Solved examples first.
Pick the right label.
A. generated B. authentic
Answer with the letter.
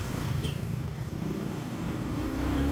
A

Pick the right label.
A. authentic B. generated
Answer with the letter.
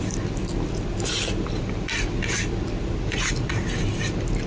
A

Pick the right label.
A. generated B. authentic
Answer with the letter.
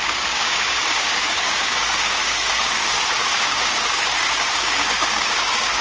A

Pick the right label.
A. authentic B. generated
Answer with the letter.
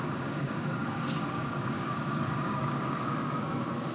B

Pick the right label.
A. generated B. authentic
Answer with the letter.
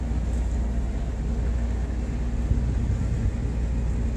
B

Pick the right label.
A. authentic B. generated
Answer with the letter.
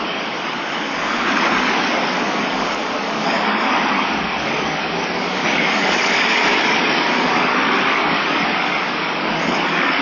B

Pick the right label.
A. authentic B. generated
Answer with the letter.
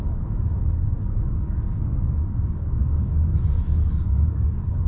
B